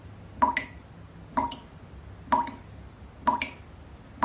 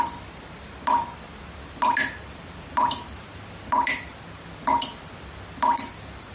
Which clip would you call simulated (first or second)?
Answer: second